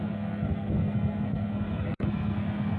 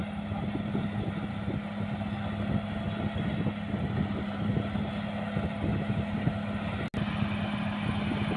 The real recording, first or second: second